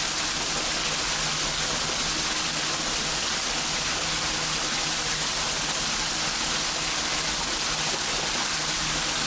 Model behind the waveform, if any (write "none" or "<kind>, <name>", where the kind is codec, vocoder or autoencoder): none